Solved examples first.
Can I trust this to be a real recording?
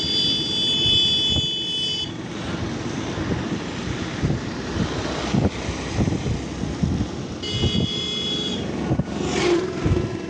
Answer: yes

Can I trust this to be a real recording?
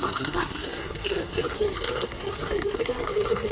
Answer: no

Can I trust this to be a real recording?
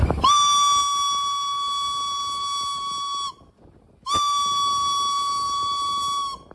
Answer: yes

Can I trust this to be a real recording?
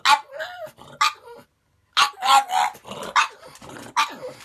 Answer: yes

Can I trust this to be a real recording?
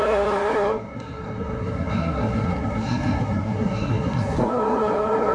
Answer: no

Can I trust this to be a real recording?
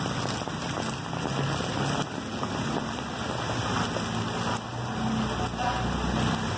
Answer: yes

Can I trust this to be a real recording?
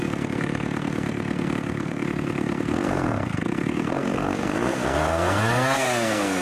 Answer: no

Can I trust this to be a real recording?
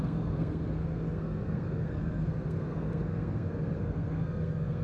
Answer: no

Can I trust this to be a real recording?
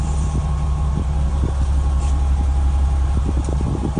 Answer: yes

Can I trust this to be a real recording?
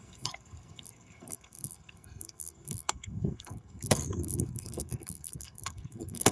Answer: no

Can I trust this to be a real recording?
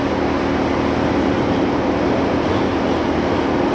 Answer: yes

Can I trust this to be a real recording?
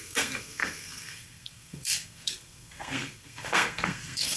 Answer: no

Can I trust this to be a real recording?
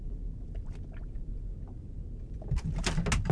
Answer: yes